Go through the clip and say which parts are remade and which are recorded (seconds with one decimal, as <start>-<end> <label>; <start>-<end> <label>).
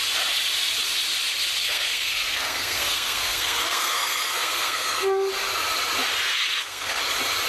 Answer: 0.0-1.6 recorded; 1.6-5.3 remade; 5.3-6.3 recorded; 6.3-7.0 remade; 7.0-7.5 recorded